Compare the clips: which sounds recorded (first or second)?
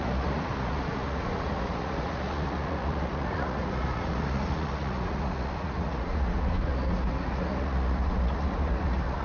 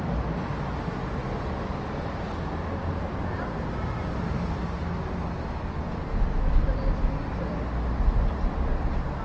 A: second